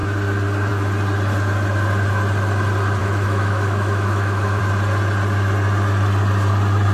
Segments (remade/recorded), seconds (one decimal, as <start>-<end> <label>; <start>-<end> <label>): 0.0-3.0 recorded; 3.0-4.6 remade; 4.6-6.9 recorded